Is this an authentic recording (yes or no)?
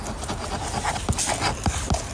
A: yes